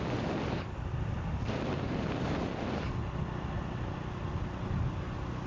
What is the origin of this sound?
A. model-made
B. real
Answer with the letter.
B